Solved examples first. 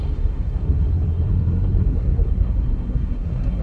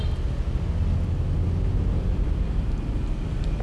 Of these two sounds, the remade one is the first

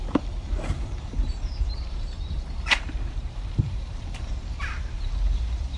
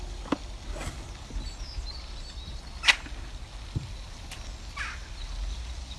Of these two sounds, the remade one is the first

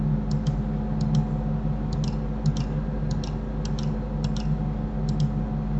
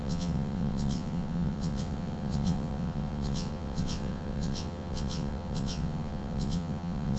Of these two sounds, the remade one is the second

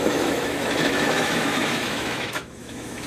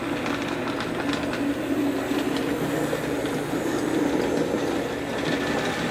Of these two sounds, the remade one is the first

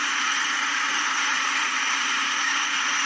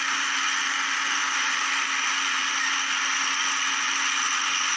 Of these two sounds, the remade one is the first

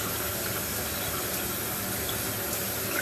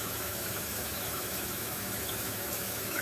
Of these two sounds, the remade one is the second